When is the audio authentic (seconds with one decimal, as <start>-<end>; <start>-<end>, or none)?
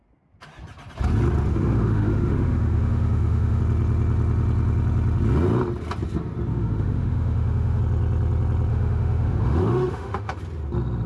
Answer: 0.0-1.5; 3.6-6.5; 7.8-8.7; 10.4-11.1